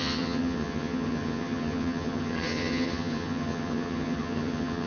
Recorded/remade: remade